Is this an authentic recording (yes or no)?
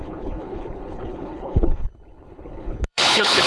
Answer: no